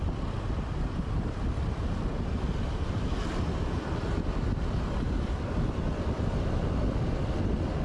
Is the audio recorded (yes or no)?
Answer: yes